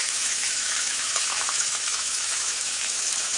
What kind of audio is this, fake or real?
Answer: fake